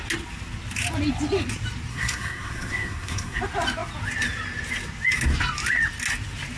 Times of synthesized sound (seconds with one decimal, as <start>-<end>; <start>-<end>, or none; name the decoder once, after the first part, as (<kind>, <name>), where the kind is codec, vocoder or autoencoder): 1.9-3.4 (codec, SNAC)